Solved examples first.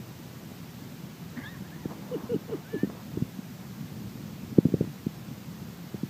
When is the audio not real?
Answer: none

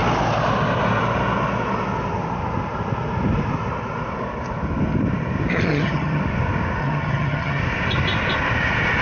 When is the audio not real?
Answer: 5.7-6.2 (vocoder, HiFi-GAN); 6.8-7.6